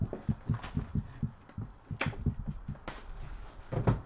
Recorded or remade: recorded